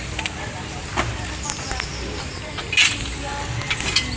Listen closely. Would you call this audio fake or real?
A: real